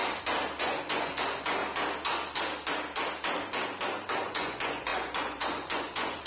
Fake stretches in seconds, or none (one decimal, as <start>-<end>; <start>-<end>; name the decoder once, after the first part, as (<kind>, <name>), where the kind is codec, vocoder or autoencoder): 0.6-1.6 (vocoder, Vocos); 4.2-6.3